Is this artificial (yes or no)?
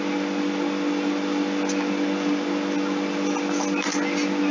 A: no